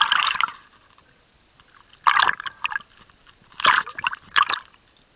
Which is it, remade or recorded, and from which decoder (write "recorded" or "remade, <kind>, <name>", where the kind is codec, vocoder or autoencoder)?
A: recorded